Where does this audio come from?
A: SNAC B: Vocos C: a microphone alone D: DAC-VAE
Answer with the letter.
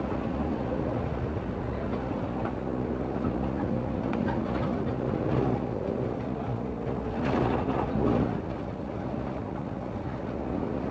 B